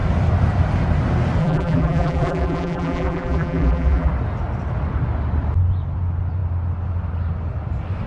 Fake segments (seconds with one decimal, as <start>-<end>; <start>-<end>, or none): 1.4-4.1

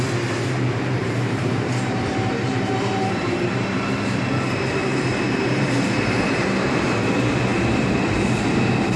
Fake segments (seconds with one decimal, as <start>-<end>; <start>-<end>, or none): 1.0-4.2; 4.8-6.8

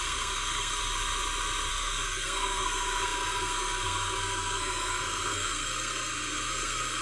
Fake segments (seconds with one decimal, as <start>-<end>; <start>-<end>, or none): 0.0-0.8; 1.7-7.0

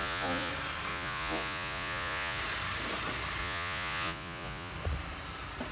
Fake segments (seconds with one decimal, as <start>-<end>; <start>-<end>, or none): 0.0-0.5; 0.9-2.4; 3.4-4.7

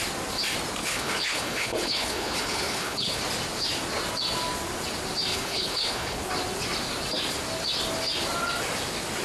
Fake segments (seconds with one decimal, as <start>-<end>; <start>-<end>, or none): 0.8-3.2; 5.3-6.3

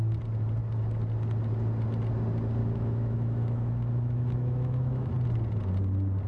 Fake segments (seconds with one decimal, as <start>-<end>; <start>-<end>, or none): 2.6-5.1